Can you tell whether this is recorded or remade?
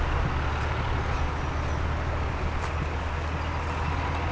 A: recorded